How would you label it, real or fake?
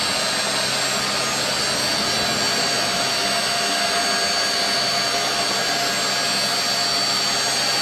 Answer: real